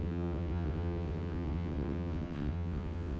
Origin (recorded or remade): remade